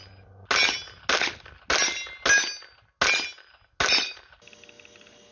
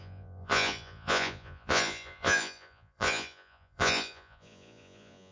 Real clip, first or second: first